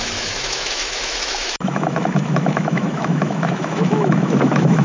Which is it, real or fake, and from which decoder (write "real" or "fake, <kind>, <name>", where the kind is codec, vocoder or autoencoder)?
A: fake, autoencoder, DAC-VAE